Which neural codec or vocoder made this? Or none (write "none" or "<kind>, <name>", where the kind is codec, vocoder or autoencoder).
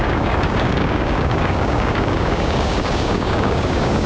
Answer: codec, DAC